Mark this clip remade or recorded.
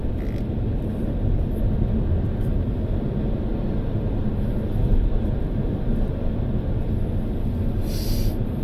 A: recorded